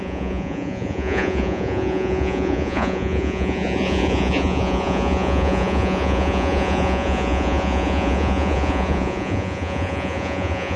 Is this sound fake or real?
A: fake